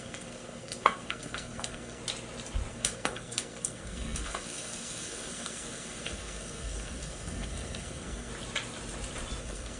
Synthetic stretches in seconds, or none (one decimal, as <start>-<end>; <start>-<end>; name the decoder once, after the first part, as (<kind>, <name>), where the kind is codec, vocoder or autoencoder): 0.0-2.0 (codec, SNAC); 2.7-8.3; 9.4-9.8